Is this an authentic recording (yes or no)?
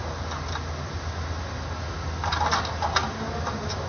yes